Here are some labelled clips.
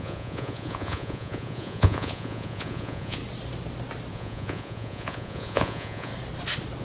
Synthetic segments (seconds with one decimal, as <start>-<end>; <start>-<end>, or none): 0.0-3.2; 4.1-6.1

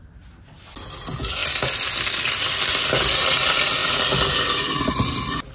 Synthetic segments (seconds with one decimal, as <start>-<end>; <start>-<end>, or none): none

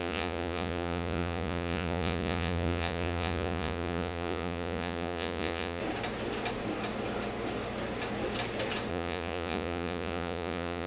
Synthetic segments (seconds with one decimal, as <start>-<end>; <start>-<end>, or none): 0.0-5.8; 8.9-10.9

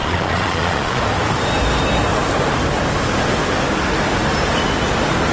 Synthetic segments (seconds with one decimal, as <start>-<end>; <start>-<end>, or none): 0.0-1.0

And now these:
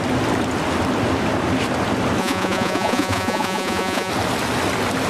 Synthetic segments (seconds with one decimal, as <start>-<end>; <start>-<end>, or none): 2.2-4.1

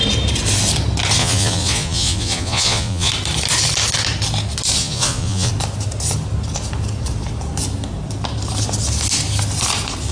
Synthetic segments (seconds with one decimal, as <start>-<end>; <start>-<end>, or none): 1.2-3.1; 4.8-5.5